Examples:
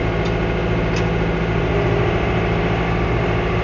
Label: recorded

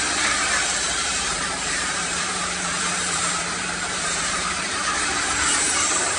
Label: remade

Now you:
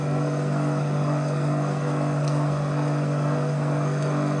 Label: remade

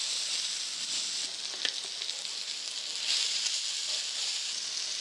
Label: recorded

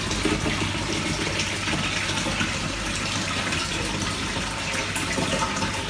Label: recorded